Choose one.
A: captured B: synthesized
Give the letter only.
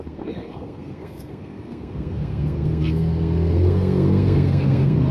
B